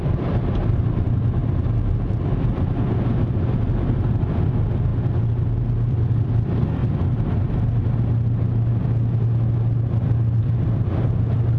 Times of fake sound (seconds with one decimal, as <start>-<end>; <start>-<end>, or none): 0.0-1.4; 2.0-4.9; 5.9-6.8; 10.4-11.6